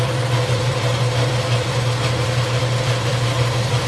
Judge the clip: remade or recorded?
remade